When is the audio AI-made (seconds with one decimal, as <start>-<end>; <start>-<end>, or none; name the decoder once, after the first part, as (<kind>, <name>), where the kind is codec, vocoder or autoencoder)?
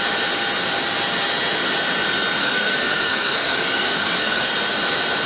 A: 2.4-4.5 (codec, SNAC)